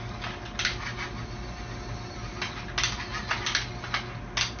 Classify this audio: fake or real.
real